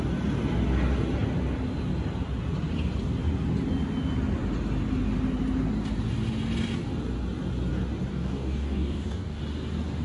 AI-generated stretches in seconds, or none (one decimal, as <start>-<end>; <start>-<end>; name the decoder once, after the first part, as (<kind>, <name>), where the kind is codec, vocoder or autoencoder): 8.1-9.4 (codec, DAC)